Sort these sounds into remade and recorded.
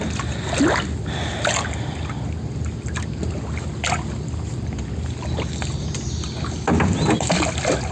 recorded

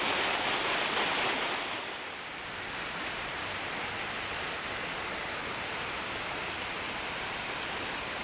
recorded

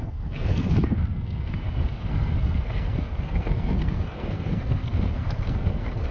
remade